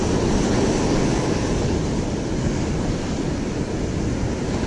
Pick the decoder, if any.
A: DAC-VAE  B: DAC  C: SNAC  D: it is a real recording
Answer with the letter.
D